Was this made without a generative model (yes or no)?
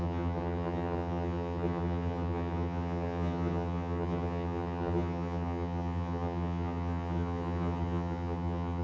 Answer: no